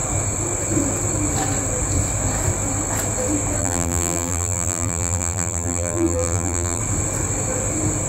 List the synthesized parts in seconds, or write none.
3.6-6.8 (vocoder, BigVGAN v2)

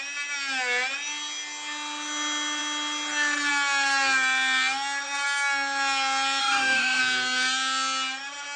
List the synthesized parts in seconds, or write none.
6.4-7.0 (autoencoder, DAC-VAE)

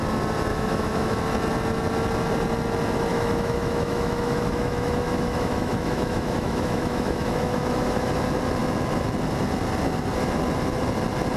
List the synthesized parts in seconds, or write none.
0.5-1.2 (autoencoder, DAC-VAE); 3.1-8.1

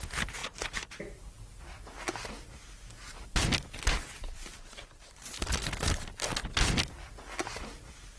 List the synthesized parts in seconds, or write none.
none

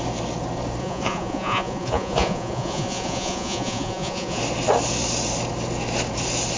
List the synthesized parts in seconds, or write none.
0.8-4.4 (vocoder, Vocos)

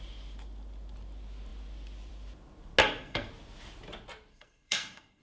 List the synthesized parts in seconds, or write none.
2.8-3.3 (codec, SNAC); 4.3-5.2

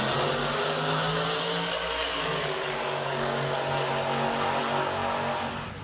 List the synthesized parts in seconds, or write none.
0.4-3.9 (codec, DAC)

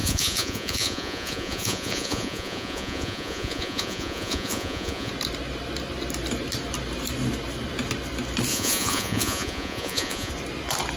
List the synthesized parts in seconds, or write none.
0.0-5.1 (vocoder, Vocos); 8.5-10.3